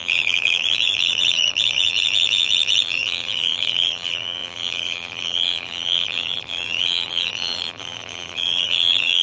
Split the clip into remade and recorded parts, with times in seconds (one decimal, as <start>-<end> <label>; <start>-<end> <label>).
0.0-9.2 remade